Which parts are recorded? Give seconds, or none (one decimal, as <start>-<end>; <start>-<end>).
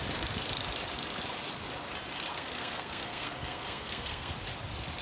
0.0-2.3; 4.3-5.0